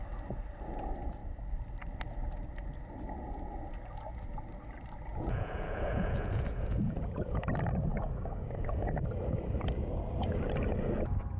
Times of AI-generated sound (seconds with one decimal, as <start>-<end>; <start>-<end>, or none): 5.1-7.5